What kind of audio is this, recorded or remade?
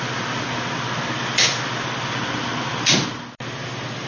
recorded